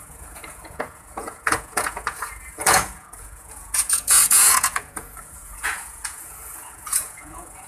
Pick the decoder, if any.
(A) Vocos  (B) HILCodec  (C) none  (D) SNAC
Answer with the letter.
A